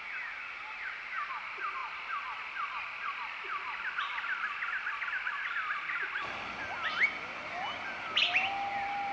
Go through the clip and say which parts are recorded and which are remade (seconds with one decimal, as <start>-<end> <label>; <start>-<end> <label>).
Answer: 0.0-9.1 recorded